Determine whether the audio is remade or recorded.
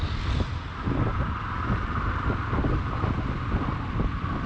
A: recorded